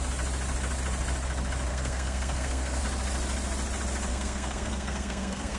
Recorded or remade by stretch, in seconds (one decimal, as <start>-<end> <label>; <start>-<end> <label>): 0.0-1.7 recorded; 1.7-2.8 remade; 2.8-4.1 recorded; 4.1-5.6 remade